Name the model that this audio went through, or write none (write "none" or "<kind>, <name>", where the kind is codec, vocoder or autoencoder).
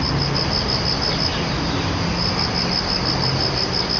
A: none